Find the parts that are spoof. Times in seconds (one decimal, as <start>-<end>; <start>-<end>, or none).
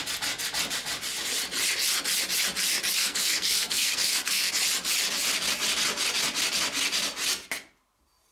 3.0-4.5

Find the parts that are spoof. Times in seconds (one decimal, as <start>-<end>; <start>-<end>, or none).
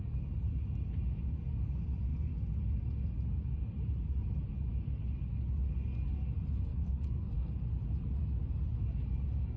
6.7-7.5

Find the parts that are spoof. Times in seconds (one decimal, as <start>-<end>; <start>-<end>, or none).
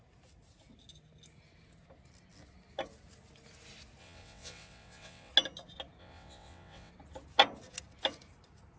4.0-5.3; 6.0-6.9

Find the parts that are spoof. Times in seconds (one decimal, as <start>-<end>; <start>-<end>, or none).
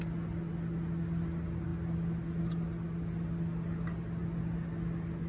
none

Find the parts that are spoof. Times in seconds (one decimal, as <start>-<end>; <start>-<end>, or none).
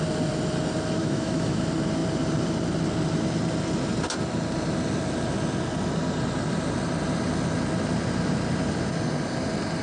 1.0-1.6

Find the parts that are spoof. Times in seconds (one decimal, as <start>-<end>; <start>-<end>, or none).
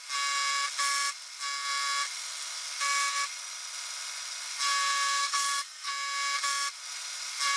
5.2-5.9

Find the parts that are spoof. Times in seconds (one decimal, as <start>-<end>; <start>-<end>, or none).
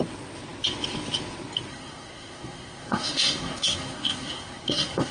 1.7-5.1